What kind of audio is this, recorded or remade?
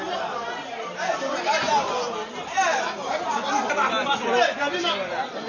recorded